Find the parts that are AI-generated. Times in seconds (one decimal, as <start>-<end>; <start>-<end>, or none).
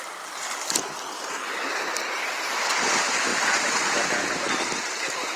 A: none